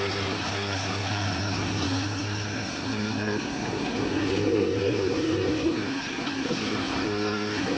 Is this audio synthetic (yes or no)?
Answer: yes